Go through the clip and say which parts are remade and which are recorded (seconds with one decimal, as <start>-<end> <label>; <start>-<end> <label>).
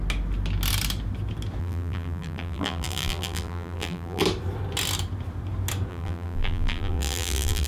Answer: 0.0-1.6 recorded; 1.6-4.2 remade; 4.2-5.9 recorded; 5.9-7.7 remade